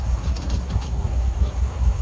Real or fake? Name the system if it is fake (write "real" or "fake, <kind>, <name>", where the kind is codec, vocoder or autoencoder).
fake, codec, SNAC